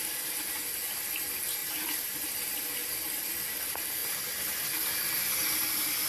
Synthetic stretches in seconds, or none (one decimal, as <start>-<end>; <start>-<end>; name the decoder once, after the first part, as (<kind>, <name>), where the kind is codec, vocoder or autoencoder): none